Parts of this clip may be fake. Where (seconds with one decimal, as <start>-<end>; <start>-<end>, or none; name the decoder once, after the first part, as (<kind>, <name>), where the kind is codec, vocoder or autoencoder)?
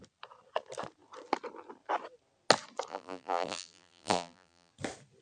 2.9-4.7 (vocoder, BigVGAN v2)